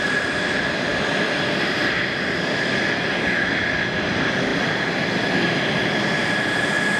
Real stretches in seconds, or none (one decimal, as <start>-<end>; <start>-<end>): 0.0-7.0